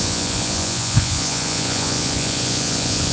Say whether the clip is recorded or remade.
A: remade